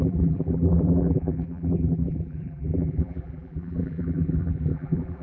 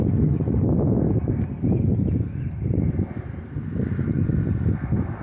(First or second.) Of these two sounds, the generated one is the first